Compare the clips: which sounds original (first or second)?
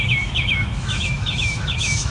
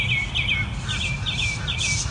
second